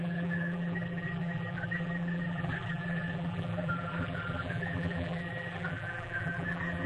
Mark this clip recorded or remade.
remade